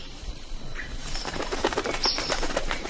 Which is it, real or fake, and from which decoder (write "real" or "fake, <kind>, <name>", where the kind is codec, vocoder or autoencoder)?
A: fake, vocoder, BigVGAN v2